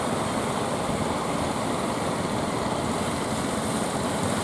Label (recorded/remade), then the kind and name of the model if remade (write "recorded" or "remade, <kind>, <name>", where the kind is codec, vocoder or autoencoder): recorded